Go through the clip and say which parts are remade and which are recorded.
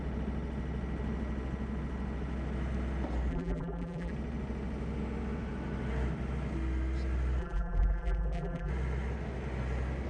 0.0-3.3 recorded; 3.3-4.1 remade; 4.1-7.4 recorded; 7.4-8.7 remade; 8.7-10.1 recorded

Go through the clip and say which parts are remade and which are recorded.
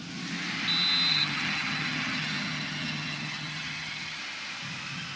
0.0-1.1 recorded; 1.1-4.2 remade; 4.2-5.2 recorded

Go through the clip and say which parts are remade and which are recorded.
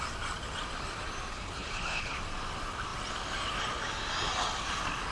0.0-1.3 recorded; 1.3-2.2 remade; 2.2-5.1 recorded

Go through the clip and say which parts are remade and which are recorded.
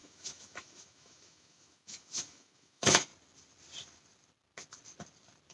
0.0-3.1 remade; 3.1-5.5 recorded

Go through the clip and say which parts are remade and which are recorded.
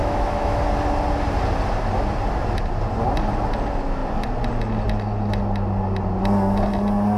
0.0-0.6 remade; 0.6-7.2 recorded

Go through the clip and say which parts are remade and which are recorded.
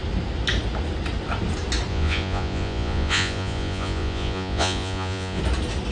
0.0-1.9 recorded; 1.9-5.4 remade; 5.4-5.9 recorded